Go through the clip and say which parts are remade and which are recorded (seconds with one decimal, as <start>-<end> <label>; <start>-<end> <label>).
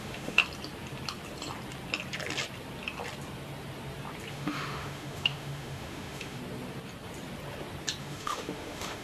0.0-0.4 remade; 0.4-4.3 recorded; 4.3-6.4 remade; 6.4-8.0 recorded; 8.0-9.0 remade